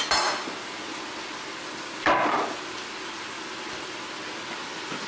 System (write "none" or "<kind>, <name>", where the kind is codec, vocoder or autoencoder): none